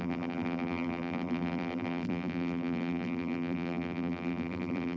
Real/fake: fake